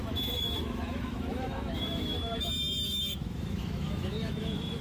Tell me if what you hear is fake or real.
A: fake